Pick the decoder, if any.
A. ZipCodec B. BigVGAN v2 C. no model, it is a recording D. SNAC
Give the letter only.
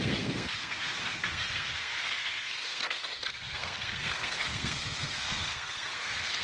D